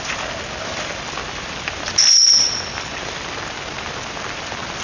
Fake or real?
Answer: real